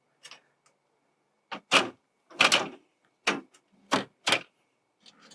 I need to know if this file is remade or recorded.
recorded